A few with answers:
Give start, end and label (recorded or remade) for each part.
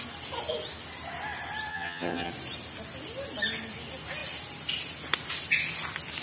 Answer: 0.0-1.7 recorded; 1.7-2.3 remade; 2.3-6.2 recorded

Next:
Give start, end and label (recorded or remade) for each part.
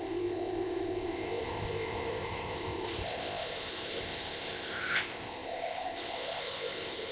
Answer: 0.0-7.1 remade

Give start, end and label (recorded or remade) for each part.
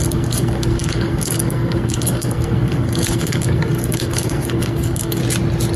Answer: 0.0-5.2 remade; 5.2-5.8 recorded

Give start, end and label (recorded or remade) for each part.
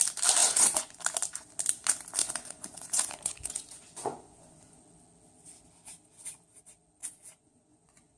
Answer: 0.0-0.4 recorded; 0.4-1.0 remade; 1.0-2.2 recorded; 2.2-4.8 remade; 4.8-7.0 recorded; 7.0-8.2 remade